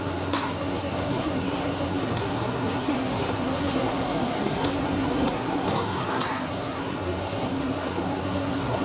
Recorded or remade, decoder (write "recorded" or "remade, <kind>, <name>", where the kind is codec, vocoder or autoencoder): remade, codec, SNAC